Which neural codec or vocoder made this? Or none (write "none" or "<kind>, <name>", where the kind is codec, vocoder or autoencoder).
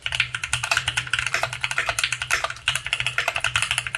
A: vocoder, BigVGAN v2